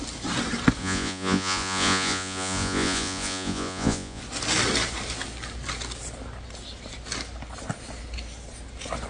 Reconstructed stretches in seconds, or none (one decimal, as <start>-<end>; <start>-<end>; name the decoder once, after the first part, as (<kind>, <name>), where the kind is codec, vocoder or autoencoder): 0.8-4.2 (vocoder, Vocos)